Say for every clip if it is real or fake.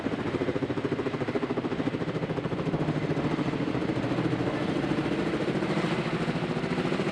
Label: real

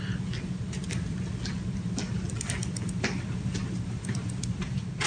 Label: real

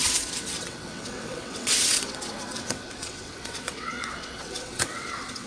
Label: fake